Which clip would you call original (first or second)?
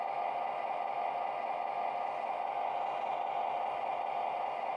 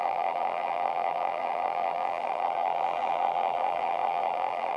first